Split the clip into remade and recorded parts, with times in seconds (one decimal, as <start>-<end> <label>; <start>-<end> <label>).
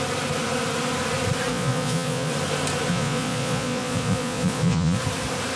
0.0-1.5 recorded; 1.5-2.3 remade; 2.3-2.9 recorded; 2.9-5.0 remade; 5.0-5.6 recorded